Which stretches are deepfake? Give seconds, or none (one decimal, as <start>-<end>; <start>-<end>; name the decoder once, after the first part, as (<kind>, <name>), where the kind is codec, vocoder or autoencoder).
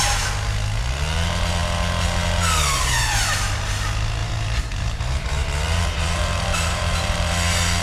4.2-7.3 (vocoder, BigVGAN v2)